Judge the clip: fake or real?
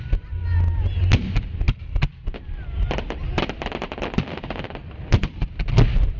real